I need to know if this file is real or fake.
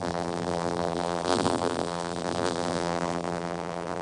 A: fake